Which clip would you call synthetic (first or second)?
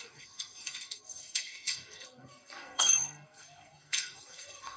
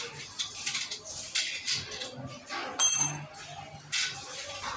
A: first